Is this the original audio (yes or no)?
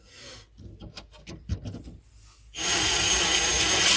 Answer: yes